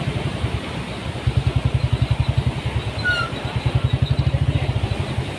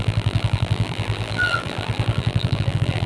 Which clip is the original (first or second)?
first